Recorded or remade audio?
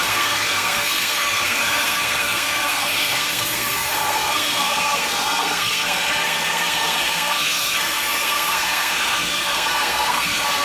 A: remade